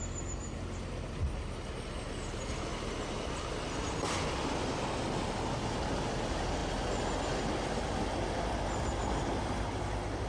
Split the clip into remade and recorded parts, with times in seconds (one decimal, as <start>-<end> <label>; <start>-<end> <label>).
0.0-10.3 recorded